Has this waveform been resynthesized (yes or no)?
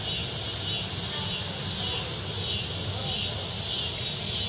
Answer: no